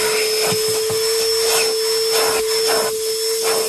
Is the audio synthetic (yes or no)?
no